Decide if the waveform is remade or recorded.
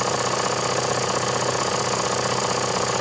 recorded